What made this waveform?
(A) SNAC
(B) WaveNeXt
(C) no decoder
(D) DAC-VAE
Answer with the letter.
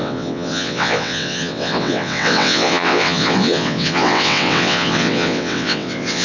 B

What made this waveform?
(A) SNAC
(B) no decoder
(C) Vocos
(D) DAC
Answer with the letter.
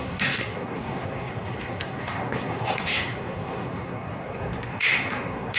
A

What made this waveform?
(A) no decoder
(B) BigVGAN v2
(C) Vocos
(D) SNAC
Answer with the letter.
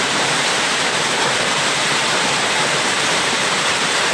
B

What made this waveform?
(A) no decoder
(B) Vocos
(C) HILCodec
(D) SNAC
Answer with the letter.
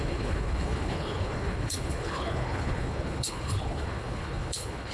C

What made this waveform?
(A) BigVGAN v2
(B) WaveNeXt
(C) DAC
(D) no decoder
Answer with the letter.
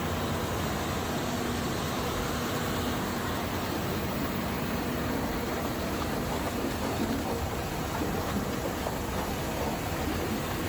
D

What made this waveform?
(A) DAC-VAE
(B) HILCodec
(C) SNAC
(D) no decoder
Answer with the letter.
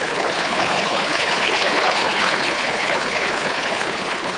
B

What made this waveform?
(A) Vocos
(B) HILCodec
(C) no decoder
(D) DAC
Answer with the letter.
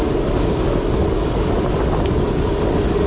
D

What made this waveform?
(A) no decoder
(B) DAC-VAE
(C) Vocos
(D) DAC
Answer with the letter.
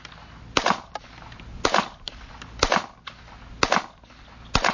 A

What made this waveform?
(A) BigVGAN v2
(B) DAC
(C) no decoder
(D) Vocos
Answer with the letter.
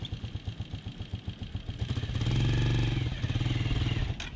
C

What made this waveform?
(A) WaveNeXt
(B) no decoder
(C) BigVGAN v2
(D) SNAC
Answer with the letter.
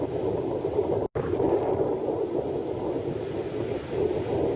B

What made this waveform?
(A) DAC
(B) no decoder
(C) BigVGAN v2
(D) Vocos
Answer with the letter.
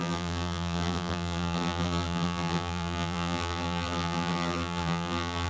C